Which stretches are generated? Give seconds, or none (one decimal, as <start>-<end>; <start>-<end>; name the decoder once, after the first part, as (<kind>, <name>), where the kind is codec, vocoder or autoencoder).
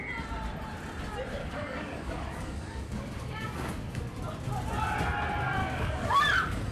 1.4-4.0 (codec, DAC); 5.6-6.2